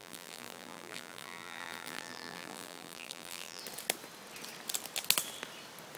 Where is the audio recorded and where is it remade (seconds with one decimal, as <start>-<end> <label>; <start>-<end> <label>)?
0.0-3.6 remade; 3.6-6.0 recorded